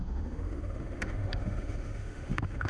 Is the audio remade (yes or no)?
yes